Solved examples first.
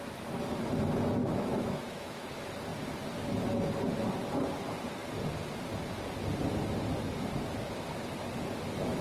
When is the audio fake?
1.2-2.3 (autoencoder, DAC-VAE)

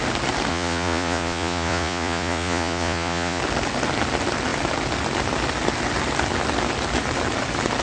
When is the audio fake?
0.5-3.4 (vocoder, Vocos)

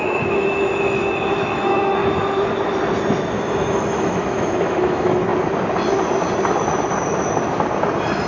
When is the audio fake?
0.0-2.0 (autoencoder, DAC-VAE); 3.4-5.3